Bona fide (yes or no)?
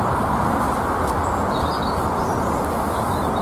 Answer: yes